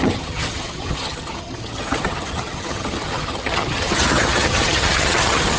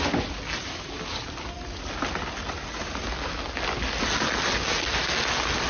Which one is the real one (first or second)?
second